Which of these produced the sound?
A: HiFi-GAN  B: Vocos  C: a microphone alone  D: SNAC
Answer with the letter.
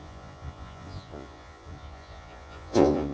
B